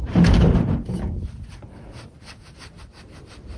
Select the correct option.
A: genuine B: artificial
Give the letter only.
B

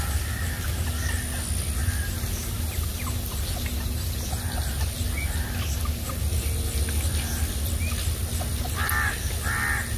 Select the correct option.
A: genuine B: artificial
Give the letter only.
A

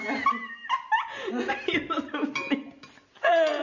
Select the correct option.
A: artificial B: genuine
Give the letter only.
B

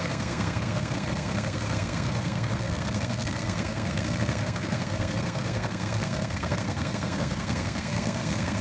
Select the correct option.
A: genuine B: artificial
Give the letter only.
B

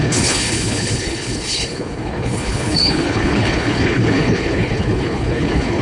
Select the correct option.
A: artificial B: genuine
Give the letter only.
A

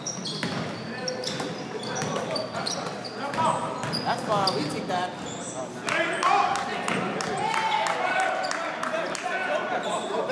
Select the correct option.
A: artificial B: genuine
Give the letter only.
B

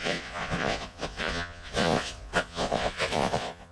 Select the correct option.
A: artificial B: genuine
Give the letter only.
A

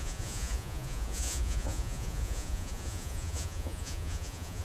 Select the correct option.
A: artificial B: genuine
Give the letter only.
A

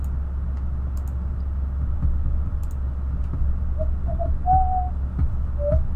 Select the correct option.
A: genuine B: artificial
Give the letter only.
A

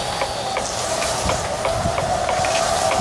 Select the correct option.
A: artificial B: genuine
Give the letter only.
B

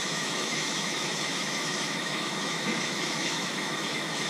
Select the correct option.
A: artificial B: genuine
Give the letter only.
A